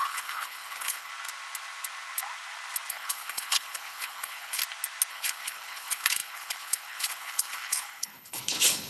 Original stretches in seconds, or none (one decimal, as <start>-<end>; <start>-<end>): 1.1-2.9; 4.6-5.1